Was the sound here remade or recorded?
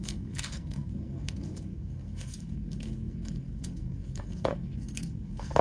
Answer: remade